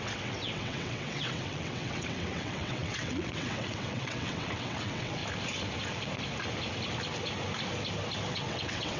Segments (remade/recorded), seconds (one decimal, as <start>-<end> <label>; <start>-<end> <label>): 0.0-5.2 remade; 5.2-8.3 recorded; 8.3-9.0 remade